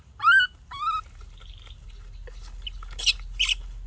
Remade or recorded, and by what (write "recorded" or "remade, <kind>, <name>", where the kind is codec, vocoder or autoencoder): recorded